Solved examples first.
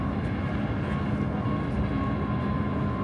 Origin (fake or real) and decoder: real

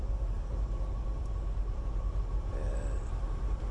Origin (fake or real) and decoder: fake, vocoder, BigVGAN v2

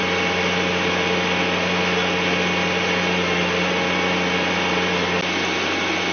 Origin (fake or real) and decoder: real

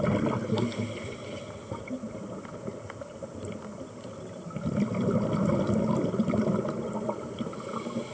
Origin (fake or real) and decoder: real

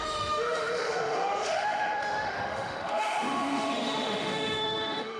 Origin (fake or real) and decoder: fake, autoencoder, DAC-VAE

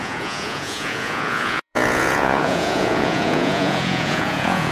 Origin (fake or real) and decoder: fake, vocoder, Vocos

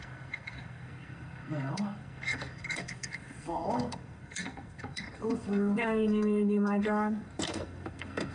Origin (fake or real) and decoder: fake, codec, SNAC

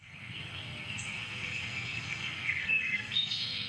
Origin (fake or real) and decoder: fake, codec, SNAC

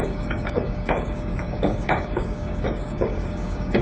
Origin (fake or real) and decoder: fake, codec, DAC